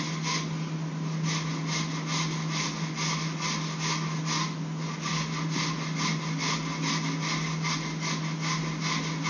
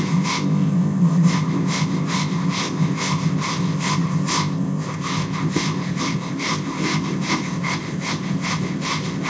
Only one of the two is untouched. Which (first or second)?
first